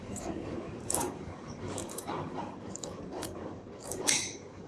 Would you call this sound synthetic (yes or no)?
yes